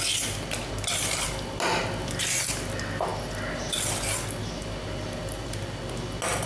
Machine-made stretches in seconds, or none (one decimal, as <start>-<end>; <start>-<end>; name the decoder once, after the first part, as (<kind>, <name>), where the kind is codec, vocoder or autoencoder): none